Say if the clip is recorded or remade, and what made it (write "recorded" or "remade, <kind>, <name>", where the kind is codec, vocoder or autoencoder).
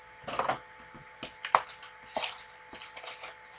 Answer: recorded